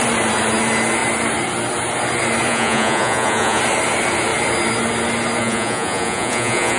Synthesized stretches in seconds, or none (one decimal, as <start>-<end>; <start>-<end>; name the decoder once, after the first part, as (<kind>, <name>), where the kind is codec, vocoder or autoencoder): 2.5-3.6 (vocoder, Vocos); 5.4-6.8